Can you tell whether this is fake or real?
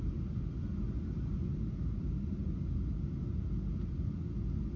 real